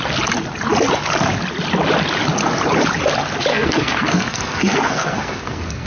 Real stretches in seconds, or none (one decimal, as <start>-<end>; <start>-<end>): 0.0-3.5